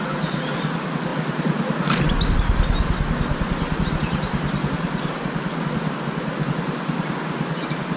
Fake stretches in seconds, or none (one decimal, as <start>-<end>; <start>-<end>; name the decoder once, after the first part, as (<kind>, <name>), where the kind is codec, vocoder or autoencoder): none